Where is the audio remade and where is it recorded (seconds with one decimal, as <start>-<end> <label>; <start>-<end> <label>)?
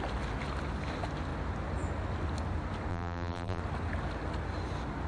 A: 0.0-2.9 recorded; 2.9-3.6 remade; 3.6-5.1 recorded